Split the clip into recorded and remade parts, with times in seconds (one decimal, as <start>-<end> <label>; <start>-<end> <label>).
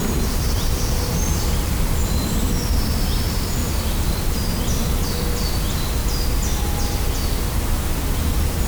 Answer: 0.0-3.6 remade; 3.6-4.2 recorded; 4.2-6.0 remade; 6.0-8.7 recorded